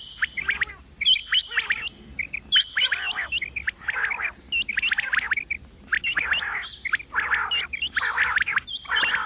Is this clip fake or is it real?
real